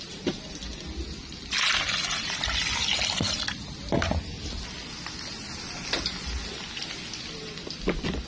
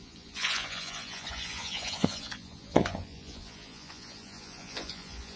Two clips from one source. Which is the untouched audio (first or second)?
first